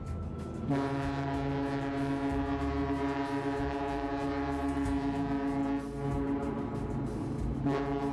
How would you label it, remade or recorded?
recorded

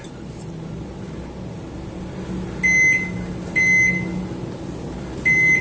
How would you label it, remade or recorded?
recorded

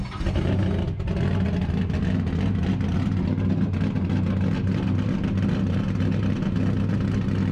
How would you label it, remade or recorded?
recorded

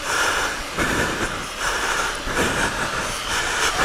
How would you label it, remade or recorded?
remade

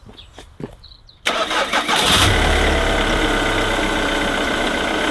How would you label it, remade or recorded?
recorded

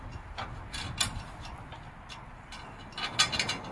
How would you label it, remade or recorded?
recorded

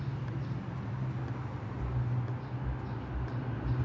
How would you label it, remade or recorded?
recorded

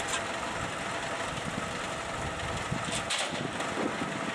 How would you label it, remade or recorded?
recorded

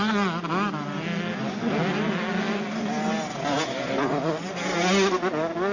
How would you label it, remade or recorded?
recorded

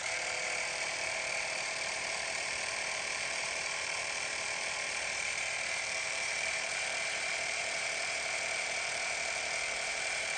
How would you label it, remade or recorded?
remade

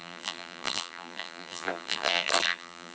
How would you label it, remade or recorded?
remade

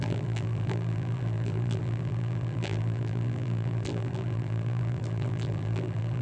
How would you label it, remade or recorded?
remade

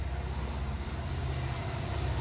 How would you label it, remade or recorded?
remade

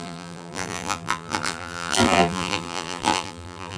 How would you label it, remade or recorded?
remade